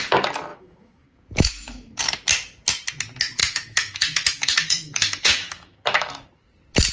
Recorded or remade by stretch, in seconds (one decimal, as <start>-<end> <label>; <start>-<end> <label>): 0.0-0.5 recorded; 0.5-2.0 remade; 2.0-3.4 recorded; 3.4-6.1 remade; 6.1-6.9 recorded